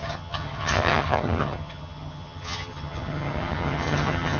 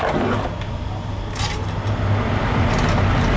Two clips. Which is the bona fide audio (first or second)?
second